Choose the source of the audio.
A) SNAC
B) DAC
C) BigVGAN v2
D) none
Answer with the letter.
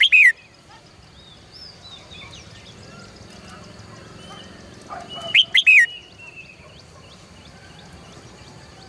D